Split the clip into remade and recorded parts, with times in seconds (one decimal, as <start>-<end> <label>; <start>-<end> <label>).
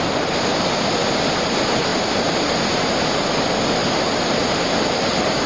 0.0-5.5 recorded